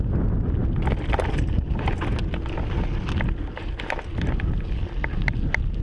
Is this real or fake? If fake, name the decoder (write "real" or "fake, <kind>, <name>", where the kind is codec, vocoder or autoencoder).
real